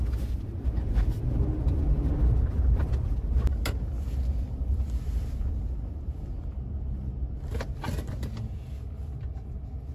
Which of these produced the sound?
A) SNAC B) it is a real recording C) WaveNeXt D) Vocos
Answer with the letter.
B